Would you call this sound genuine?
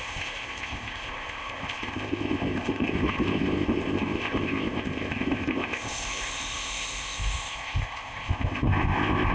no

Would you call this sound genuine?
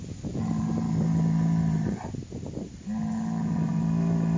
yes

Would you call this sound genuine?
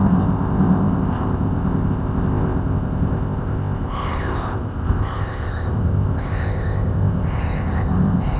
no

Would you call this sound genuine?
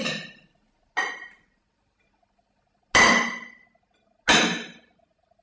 yes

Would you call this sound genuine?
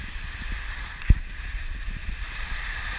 yes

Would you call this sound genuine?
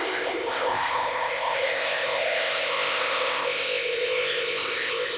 no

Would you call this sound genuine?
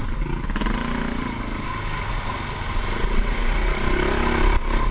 yes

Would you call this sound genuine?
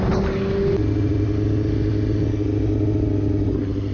yes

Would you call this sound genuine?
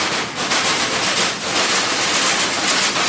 yes